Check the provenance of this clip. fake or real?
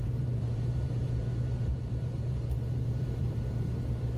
fake